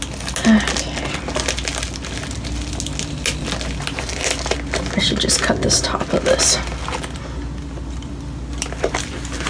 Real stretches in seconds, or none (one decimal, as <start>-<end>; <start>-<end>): 0.0-9.5